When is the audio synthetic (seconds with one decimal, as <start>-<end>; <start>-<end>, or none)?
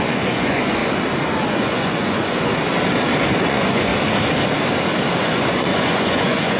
0.0-0.8; 1.5-2.5; 3.4-3.9; 5.2-6.6